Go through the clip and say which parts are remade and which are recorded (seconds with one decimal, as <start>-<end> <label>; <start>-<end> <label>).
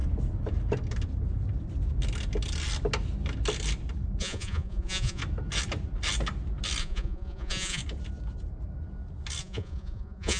0.0-4.2 recorded; 4.2-5.2 remade; 5.2-6.8 recorded; 6.8-7.8 remade; 7.8-9.4 recorded; 9.4-10.4 remade